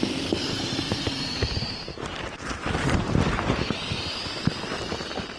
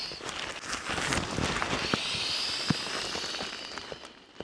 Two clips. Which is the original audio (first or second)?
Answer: second